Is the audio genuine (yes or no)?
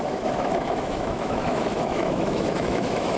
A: no